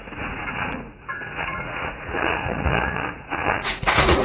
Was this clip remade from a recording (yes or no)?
yes